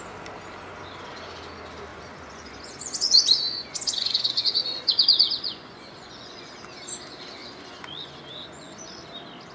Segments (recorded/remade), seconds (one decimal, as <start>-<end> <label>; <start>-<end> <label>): 0.0-1.9 recorded; 1.9-6.5 remade; 6.5-7.4 recorded; 7.4-9.0 remade; 9.0-9.5 recorded